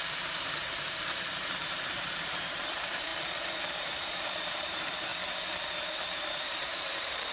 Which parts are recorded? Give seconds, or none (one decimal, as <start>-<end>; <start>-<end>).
3.1-3.7; 5.1-6.1